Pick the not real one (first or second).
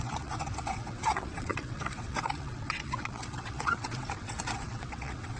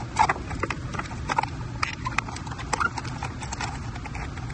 first